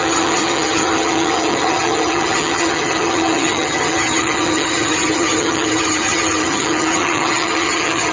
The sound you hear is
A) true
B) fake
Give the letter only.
B